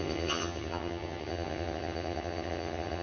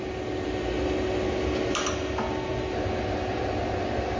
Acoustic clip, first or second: second